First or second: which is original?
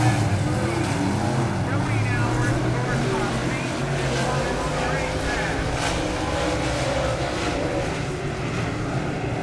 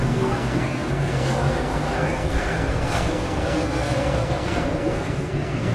first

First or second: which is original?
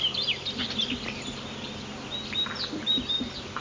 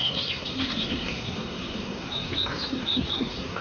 first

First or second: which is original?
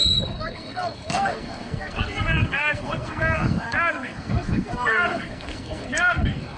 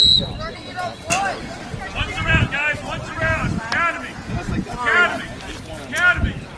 second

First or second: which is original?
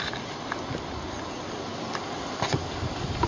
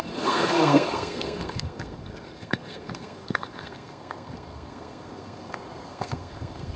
first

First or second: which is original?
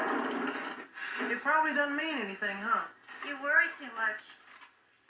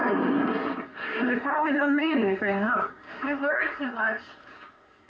first